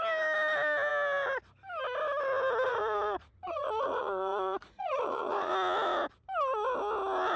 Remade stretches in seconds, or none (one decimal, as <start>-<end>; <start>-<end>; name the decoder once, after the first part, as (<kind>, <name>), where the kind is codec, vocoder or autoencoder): 2.7-5.5 (vocoder, Vocos)